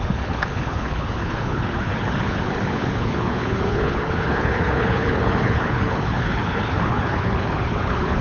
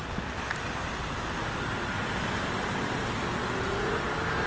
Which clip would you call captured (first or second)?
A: second